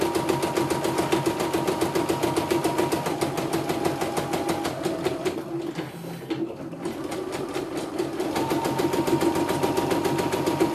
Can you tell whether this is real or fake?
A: real